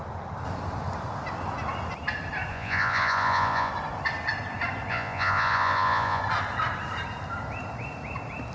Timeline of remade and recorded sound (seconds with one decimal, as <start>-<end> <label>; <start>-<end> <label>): 0.0-2.5 recorded; 2.5-3.7 remade; 3.7-4.9 recorded; 4.9-6.2 remade; 6.2-8.5 recorded